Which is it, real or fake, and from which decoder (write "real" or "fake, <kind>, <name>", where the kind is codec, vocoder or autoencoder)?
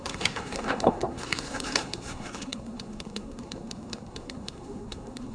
fake, codec, SNAC